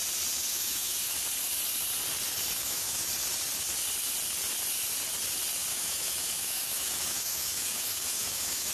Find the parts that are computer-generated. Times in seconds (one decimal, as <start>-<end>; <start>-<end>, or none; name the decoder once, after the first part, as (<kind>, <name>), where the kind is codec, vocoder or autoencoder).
0.5-1.2 (autoencoder, DAC-VAE); 2.6-3.1; 5.7-8.7